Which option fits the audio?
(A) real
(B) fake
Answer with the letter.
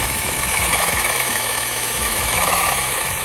B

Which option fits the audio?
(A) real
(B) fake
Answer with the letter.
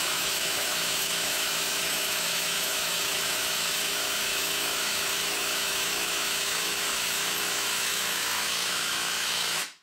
B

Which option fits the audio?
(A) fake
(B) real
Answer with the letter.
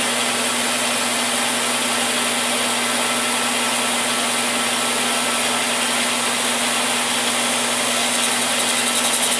B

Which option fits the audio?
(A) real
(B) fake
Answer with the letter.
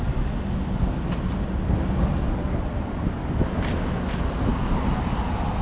A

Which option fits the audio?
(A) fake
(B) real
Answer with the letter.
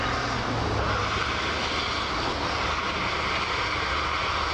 B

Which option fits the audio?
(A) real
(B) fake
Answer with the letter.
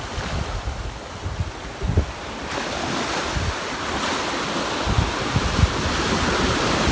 A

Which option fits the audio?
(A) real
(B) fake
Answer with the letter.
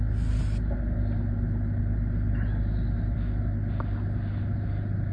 A